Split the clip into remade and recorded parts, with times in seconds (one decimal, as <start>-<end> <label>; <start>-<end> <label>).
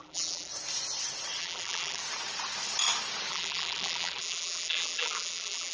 0.0-0.5 remade; 0.5-1.4 recorded; 1.4-2.0 remade; 2.0-3.3 recorded; 3.3-5.7 remade